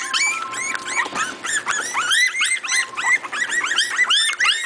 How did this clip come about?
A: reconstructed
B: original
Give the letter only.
B